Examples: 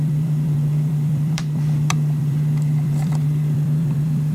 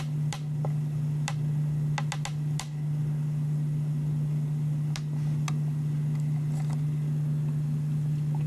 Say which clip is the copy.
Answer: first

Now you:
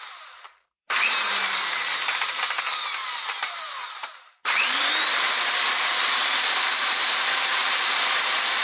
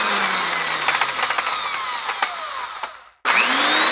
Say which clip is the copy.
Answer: first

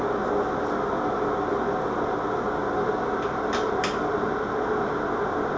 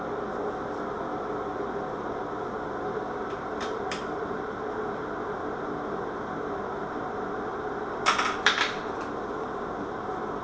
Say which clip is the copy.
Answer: second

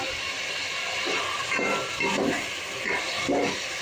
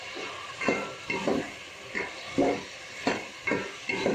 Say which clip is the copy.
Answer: second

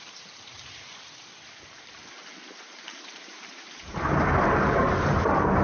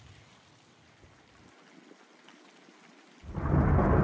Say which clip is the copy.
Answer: first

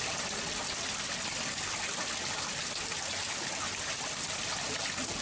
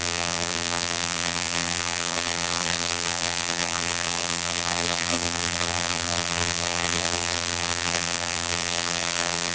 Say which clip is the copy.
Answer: second